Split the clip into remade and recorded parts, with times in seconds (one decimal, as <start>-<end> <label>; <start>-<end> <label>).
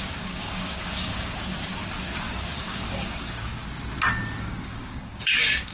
0.0-1.4 remade; 1.4-2.2 recorded; 2.2-3.6 remade; 3.6-4.4 recorded; 4.4-5.7 remade